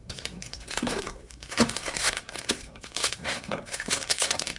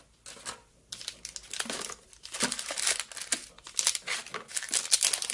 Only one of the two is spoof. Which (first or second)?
first